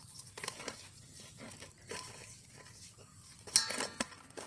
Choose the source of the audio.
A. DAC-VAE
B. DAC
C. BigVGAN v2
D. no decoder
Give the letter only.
D